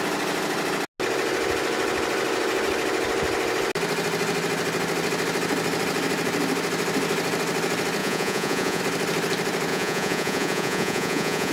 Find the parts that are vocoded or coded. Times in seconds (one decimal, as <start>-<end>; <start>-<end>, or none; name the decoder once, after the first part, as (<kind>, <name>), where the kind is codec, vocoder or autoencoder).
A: 8.0-8.8 (vocoder, Vocos); 9.7-11.5